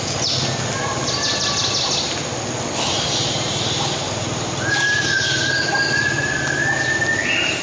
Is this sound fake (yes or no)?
no